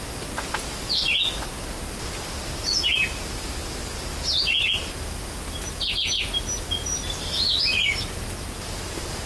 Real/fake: real